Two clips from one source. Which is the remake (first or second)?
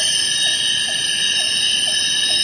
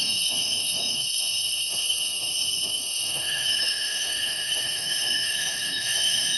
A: second